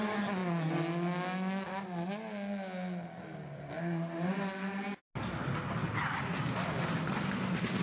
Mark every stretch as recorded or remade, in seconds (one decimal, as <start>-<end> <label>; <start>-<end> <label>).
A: 0.0-7.8 recorded